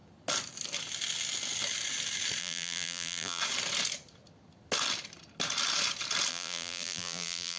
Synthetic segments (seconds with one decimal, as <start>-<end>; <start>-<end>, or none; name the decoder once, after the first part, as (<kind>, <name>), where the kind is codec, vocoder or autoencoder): 2.4-3.4 (vocoder, BigVGAN v2); 6.3-7.6